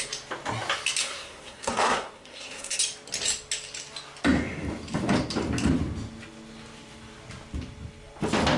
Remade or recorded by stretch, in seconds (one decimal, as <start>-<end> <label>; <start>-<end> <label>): 0.0-1.0 recorded; 1.0-2.8 remade; 2.8-8.6 recorded